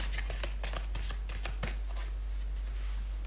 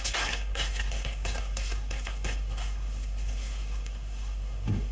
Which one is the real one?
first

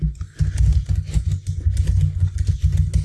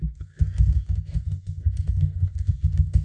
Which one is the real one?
first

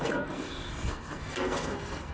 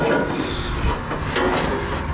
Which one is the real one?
second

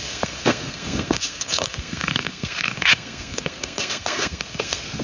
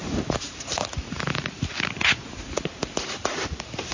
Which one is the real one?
second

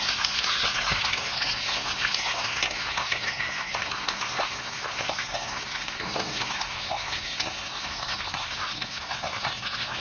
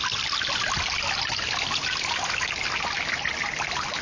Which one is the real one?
second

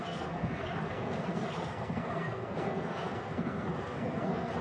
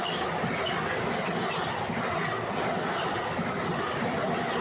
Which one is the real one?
second